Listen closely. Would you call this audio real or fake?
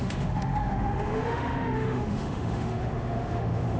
fake